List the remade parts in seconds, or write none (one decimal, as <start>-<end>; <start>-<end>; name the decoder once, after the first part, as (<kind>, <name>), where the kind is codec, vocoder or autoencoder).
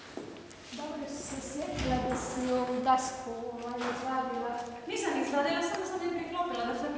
2.3-2.9 (codec, DAC)